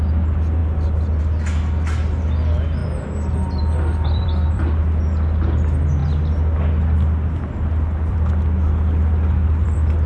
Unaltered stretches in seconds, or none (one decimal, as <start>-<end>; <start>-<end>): 2.8-3.6; 6.0-7.4